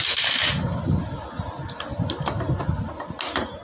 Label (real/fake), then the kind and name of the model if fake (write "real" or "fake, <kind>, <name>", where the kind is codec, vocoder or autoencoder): real